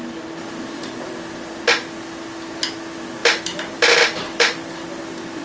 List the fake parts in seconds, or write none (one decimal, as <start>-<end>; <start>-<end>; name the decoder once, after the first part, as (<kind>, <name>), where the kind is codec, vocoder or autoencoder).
none